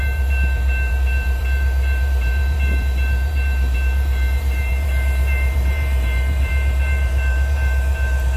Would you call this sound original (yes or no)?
no